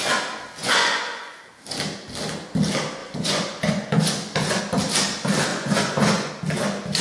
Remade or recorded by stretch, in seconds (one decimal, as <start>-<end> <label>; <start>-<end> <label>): 0.0-0.6 recorded; 0.6-1.4 remade; 1.4-3.0 recorded; 3.0-4.6 remade; 4.6-5.5 recorded; 5.5-6.3 remade; 6.3-7.0 recorded

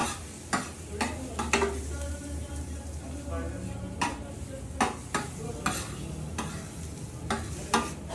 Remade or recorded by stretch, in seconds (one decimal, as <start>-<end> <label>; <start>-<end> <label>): 0.0-8.1 recorded

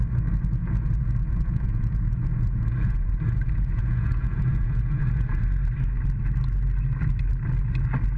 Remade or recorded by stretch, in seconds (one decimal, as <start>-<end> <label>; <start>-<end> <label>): 0.0-0.6 recorded; 0.6-5.4 remade; 5.4-8.2 recorded

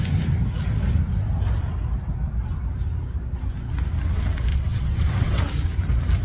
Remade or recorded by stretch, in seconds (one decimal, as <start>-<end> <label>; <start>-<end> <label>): 0.0-4.5 recorded; 4.5-5.4 remade; 5.4-6.2 recorded

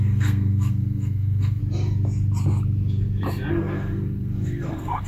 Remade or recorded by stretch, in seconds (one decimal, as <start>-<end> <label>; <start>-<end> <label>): 0.0-1.6 remade; 1.6-3.5 recorded; 3.5-5.1 remade

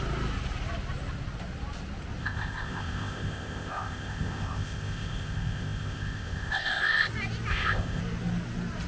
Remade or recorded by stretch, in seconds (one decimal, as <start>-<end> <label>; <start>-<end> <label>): 0.0-2.2 recorded; 2.2-7.1 remade; 7.1-7.5 recorded; 7.5-8.0 remade; 8.0-8.9 recorded

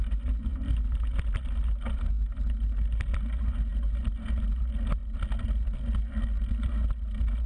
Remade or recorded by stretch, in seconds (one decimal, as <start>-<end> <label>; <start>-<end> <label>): 0.0-7.5 recorded

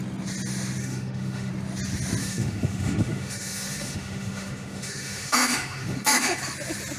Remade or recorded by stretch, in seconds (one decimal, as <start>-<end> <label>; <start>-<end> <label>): 0.0-0.8 recorded; 0.8-1.5 remade; 1.5-2.2 recorded; 2.2-6.4 remade; 6.4-7.0 recorded